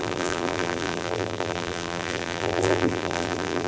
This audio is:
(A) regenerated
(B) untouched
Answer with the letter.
A